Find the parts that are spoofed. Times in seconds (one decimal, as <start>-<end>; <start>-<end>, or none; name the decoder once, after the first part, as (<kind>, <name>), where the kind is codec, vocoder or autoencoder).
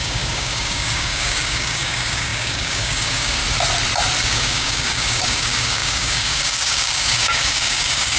0.0-3.4 (codec, DAC); 4.2-8.2